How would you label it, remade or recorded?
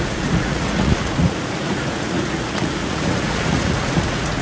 remade